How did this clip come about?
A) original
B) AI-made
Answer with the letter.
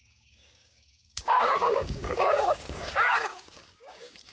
B